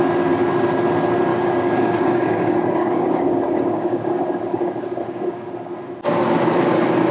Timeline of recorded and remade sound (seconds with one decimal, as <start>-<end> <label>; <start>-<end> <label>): 0.0-1.3 recorded; 1.3-5.5 remade; 5.5-7.1 recorded